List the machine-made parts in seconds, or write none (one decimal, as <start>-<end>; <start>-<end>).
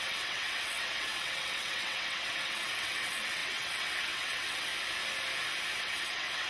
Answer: 0.0-4.7; 5.8-6.5